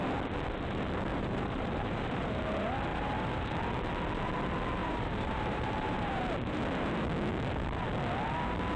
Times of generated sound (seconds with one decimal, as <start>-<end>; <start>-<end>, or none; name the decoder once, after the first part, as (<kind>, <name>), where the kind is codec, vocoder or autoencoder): 1.1-2.4 (vocoder, BigVGAN v2); 2.9-3.6; 4.8-6.6